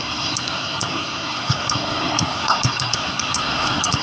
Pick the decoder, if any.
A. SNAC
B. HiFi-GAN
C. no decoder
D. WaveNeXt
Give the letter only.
A